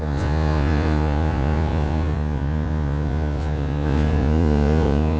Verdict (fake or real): fake